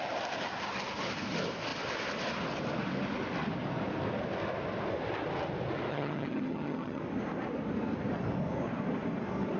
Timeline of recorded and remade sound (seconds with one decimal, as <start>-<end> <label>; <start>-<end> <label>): 0.0-5.9 recorded; 5.9-7.0 remade; 7.0-9.6 recorded

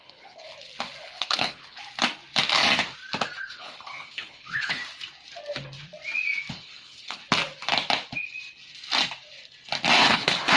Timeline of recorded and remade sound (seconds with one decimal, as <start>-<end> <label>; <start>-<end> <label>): 0.0-0.5 remade; 0.5-1.0 recorded; 1.0-1.8 remade; 1.8-3.4 recorded; 3.4-4.8 remade; 4.8-6.5 recorded; 6.5-7.2 remade; 7.2-10.0 recorded; 10.0-10.6 remade